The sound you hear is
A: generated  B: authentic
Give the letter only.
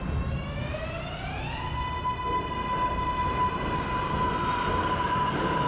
B